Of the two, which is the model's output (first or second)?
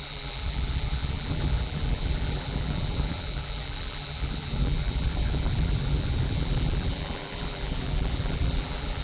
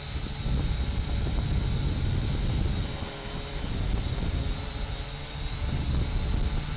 first